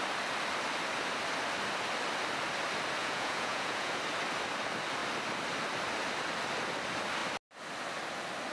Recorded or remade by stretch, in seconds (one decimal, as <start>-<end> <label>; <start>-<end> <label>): 0.0-3.0 recorded; 3.0-4.0 remade; 4.0-8.5 recorded